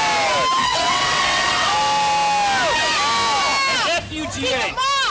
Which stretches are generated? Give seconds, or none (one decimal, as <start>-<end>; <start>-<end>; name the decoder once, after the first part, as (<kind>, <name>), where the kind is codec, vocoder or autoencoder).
0.6-1.7 (vocoder, WaveNeXt)